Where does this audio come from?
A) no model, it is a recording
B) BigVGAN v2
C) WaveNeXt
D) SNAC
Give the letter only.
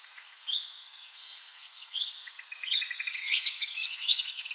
D